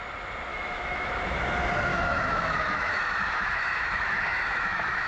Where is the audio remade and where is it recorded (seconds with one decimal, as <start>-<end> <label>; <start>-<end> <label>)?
0.0-0.5 recorded; 0.5-1.1 remade; 1.1-1.9 recorded; 1.9-5.1 remade